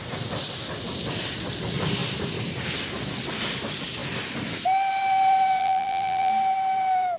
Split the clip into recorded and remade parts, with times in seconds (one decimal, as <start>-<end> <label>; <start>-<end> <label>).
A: 0.0-5.6 recorded; 5.6-6.3 remade; 6.3-7.2 recorded